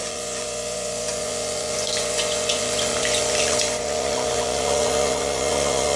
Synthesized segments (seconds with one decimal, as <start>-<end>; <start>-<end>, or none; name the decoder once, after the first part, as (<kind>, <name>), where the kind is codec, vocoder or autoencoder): 0.0-6.0 (vocoder, Vocos)